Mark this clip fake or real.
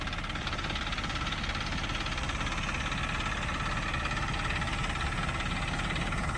real